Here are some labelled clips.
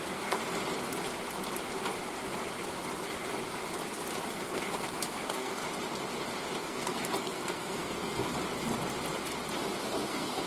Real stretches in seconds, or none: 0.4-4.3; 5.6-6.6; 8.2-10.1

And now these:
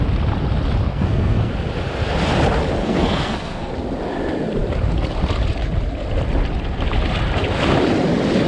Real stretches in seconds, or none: 0.0-0.9; 1.5-2.8; 3.7-8.5

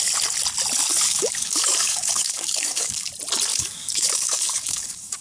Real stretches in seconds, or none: 0.0-0.9; 3.1-3.5

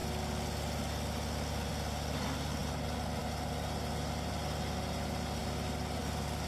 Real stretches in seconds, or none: 0.0-6.5

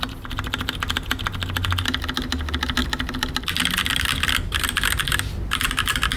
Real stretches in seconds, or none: 0.0-2.8; 4.8-6.2